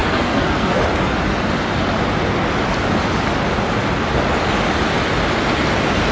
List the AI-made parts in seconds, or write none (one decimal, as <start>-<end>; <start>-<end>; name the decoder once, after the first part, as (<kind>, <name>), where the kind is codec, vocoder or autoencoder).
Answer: 0.0-0.8 (codec, SNAC)